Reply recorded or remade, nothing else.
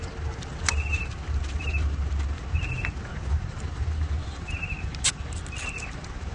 recorded